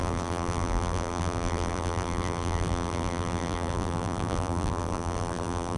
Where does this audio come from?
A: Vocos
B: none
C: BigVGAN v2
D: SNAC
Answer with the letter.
C